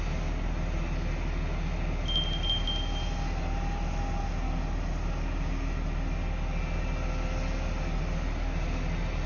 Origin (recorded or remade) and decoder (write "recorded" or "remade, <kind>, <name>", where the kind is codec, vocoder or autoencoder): recorded